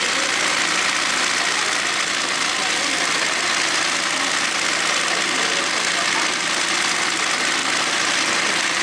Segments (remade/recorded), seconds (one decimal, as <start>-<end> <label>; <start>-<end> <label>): 0.0-7.6 recorded; 7.6-8.8 remade